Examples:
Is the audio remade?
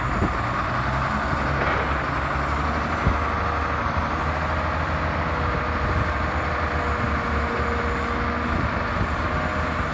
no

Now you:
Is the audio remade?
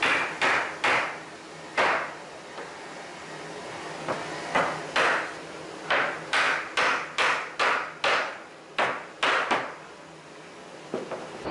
no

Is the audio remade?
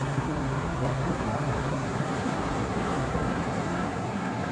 yes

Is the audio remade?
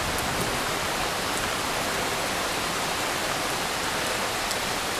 no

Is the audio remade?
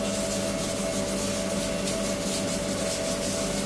no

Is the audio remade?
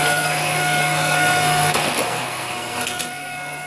yes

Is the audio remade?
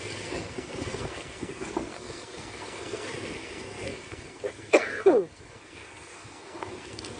yes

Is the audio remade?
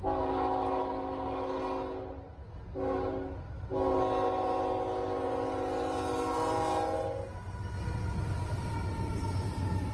no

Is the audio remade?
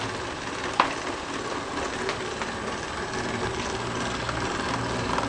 no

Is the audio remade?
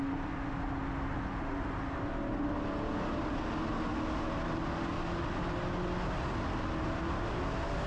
no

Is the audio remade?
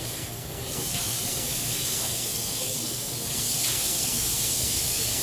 yes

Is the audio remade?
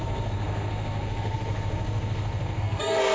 yes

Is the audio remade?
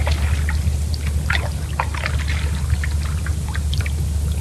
no